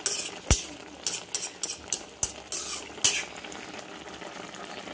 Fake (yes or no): no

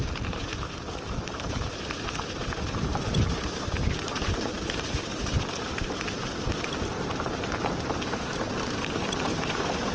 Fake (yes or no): yes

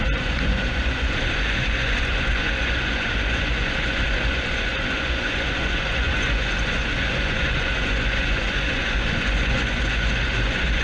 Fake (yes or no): yes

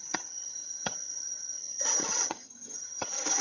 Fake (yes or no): yes